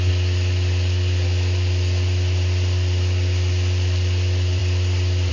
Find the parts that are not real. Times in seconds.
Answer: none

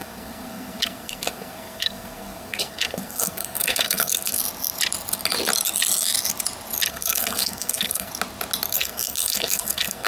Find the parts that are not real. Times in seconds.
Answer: 0.0-4.4 (codec, SNAC); 6.9-8.1; 8.7-10.1

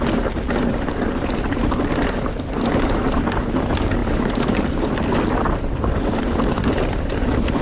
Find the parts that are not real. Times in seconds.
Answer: 0.7-1.8 (vocoder, BigVGAN v2); 4.0-4.9

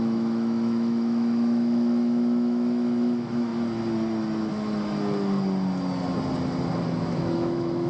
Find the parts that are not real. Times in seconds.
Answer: 0.0-3.5 (autoencoder, DAC-VAE); 7.1-7.9

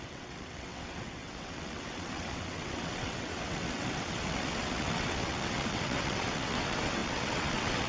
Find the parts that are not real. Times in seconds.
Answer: 0.0-7.9 (vocoder, WaveNeXt)

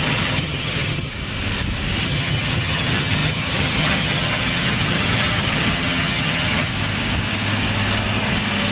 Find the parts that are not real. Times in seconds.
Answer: 0.0-1.1 (vocoder, HiFi-GAN); 2.0-6.7

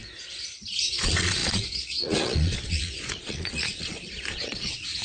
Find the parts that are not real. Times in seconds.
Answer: 0.8-5.0 (vocoder, Vocos)

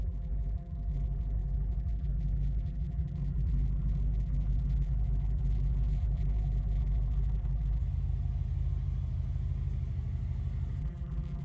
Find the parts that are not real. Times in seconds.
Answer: 0.0-7.8 (vocoder, BigVGAN v2); 10.8-11.4